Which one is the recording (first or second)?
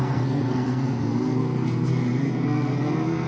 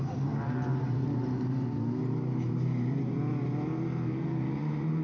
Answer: second